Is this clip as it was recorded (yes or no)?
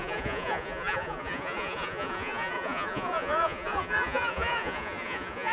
no